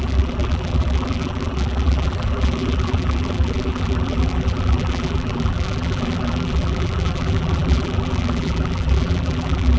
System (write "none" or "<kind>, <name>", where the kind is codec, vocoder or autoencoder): vocoder, BigVGAN v2